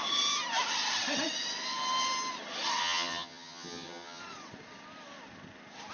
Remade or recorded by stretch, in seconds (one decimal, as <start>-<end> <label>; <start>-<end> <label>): 0.0-2.8 recorded; 2.8-4.2 remade; 4.2-5.9 recorded